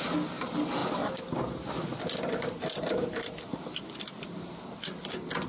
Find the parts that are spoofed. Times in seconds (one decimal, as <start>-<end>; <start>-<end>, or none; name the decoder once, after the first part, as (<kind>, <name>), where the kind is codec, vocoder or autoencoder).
none